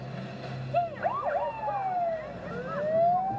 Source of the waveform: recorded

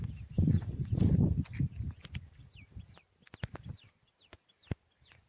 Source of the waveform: recorded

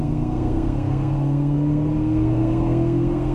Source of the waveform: remade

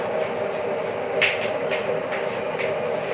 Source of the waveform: recorded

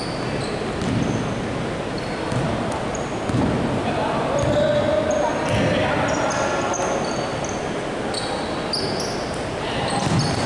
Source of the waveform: recorded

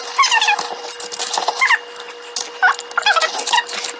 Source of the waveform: recorded